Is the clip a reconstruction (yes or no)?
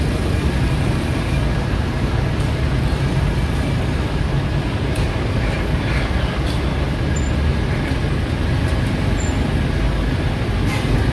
no